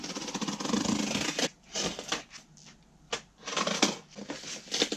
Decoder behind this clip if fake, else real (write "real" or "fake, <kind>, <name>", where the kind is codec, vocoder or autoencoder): real